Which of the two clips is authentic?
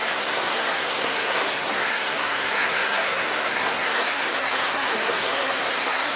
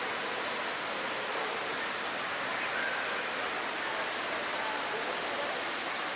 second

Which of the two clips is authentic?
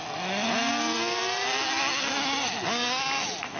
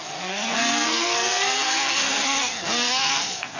first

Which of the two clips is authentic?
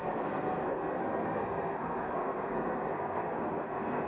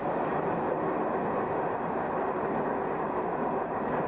second